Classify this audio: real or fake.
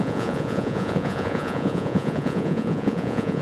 fake